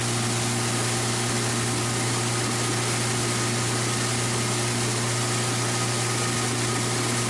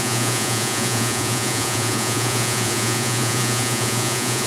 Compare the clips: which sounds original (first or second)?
first